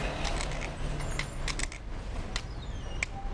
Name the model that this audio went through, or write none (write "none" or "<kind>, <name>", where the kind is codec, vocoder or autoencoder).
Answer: none